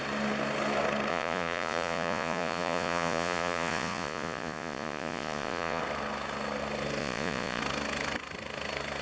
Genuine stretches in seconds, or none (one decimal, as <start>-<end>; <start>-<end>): 0.0-1.1; 5.8-7.0; 7.6-9.0